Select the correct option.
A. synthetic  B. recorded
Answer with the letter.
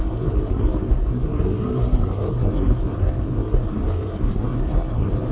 A